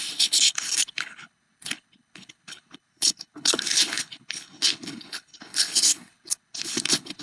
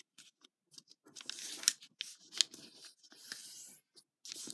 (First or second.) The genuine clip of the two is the second